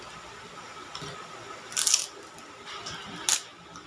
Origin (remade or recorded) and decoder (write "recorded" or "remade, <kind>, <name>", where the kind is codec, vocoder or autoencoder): recorded